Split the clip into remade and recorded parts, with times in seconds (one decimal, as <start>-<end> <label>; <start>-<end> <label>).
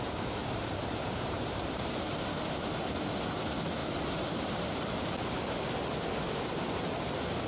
0.0-0.4 recorded; 0.4-2.3 remade; 2.3-3.8 recorded; 3.8-4.8 remade; 4.8-7.5 recorded